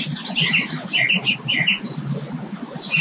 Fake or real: real